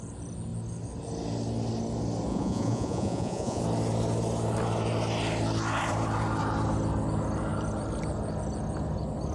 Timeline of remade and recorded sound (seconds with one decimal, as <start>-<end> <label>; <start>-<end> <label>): 0.0-2.3 recorded; 2.3-3.6 remade; 3.6-9.3 recorded

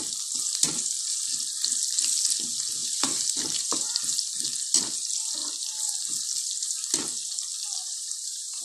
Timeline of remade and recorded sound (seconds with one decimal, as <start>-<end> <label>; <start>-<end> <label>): 0.0-2.8 recorded; 2.8-4.0 remade; 4.0-7.8 recorded; 7.8-8.6 remade

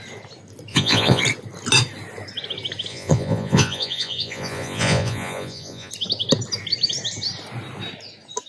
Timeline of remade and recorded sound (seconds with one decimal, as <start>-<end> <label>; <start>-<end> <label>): 0.0-0.7 recorded; 0.7-1.2 remade; 1.2-2.9 recorded; 2.9-5.9 remade; 5.9-8.5 recorded